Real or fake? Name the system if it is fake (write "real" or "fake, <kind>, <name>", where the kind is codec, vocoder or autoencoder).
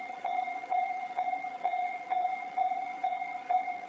fake, vocoder, HiFi-GAN